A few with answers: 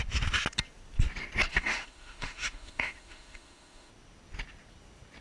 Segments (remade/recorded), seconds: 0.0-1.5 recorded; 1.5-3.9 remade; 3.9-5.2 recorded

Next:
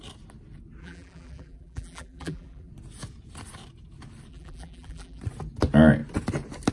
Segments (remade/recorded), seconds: 0.0-0.8 recorded; 0.8-2.7 remade; 2.7-4.3 recorded; 4.3-5.2 remade; 5.2-6.7 recorded

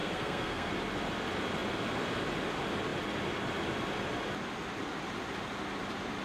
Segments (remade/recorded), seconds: 0.0-0.7 remade; 0.7-6.2 recorded

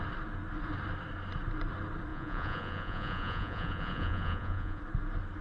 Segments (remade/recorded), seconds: 0.0-2.1 recorded; 2.1-4.8 remade; 4.8-5.4 recorded

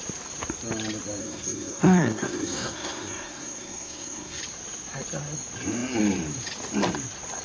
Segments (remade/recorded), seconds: 0.0-1.2 recorded; 1.2-4.4 remade; 4.4-7.4 recorded

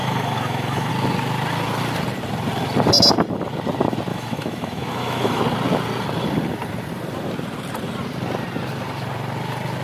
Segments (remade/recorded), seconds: 0.0-0.9 remade; 0.9-4.1 recorded; 4.1-5.4 remade; 5.4-9.8 recorded

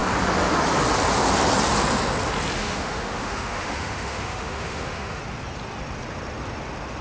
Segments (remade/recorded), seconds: 0.0-2.6 recorded; 2.6-5.2 remade; 5.2-7.0 recorded